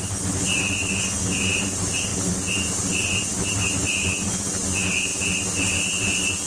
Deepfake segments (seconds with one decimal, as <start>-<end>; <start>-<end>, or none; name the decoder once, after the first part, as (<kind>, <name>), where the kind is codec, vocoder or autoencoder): none